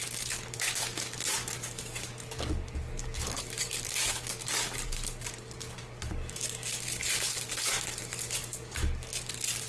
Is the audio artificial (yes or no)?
yes